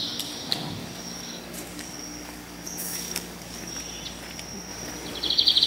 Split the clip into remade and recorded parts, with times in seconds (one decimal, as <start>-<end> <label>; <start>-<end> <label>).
0.0-0.8 recorded; 0.8-3.7 remade; 3.7-5.7 recorded